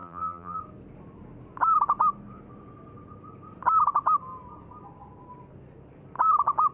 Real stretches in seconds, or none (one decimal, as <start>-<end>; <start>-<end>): 0.6-6.7